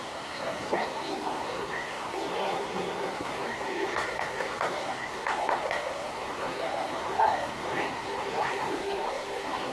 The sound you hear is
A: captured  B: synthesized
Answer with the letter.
B